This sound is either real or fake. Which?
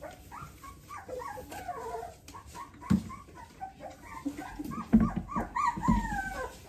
real